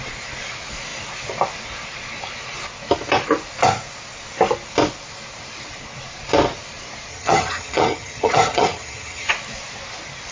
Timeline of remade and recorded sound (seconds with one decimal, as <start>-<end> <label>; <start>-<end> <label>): 0.0-7.1 recorded; 7.1-9.3 remade; 9.3-10.3 recorded